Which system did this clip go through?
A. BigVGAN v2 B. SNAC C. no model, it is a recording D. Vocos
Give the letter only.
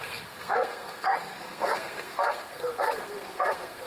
B